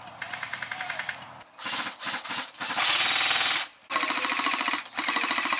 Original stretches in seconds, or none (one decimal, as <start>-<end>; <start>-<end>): 0.0-5.6